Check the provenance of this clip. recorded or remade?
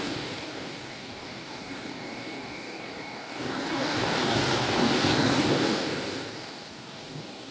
remade